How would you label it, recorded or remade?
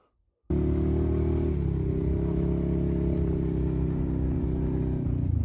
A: recorded